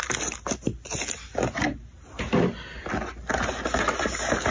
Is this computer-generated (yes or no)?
no